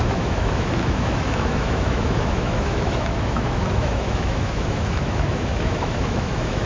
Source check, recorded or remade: remade